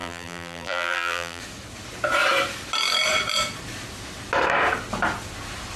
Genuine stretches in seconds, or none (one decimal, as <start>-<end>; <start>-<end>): 1.4-5.8